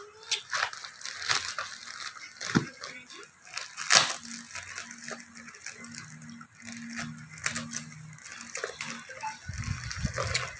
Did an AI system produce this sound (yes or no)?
no